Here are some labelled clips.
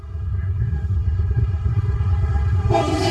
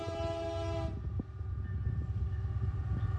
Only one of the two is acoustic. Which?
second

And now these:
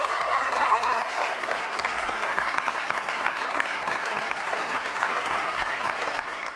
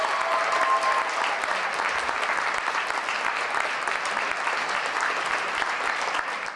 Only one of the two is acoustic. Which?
second